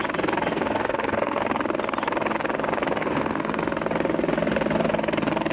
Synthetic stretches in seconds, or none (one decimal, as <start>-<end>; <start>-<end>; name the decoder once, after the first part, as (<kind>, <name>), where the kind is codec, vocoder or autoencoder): 0.5-1.4 (codec, SNAC); 3.0-3.6